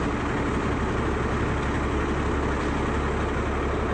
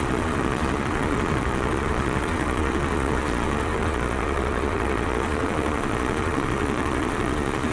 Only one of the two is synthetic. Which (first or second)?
second